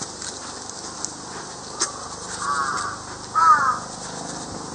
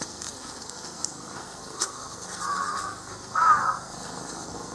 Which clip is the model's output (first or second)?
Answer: second